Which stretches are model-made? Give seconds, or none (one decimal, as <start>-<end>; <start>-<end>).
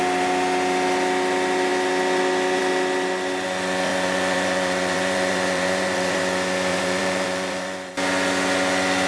3.9-6.2; 6.7-7.9